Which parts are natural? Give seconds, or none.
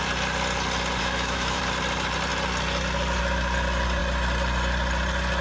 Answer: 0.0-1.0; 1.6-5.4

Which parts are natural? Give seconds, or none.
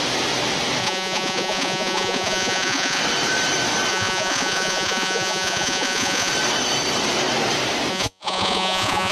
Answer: 0.0-0.8; 3.0-3.9; 6.3-7.9